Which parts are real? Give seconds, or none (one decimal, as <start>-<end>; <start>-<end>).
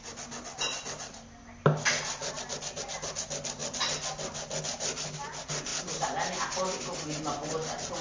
0.0-8.0